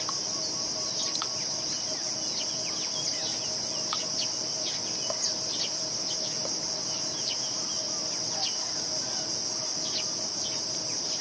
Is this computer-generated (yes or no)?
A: no